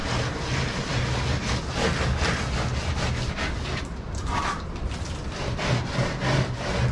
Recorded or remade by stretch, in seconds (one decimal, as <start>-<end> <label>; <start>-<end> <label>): 0.0-6.9 recorded